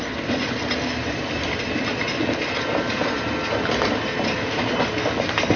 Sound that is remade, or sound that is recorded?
remade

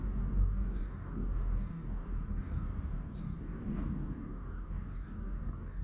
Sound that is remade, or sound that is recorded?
remade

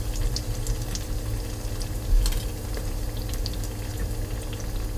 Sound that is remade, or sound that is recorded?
recorded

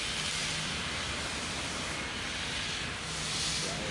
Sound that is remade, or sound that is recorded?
recorded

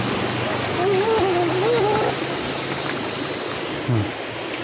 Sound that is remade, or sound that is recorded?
recorded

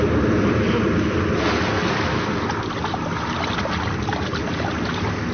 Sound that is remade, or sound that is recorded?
recorded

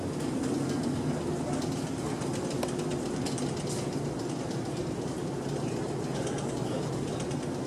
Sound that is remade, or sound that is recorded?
recorded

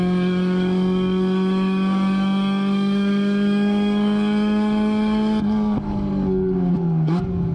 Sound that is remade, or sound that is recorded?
remade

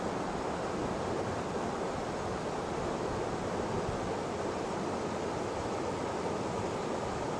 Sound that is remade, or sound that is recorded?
recorded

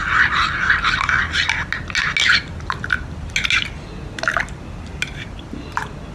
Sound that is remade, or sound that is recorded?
recorded